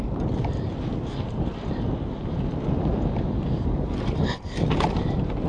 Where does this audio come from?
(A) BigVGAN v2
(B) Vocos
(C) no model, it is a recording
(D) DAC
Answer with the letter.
C